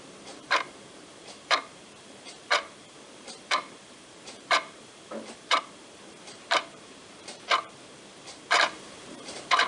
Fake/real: fake